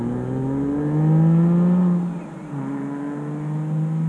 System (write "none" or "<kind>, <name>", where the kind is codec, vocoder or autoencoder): none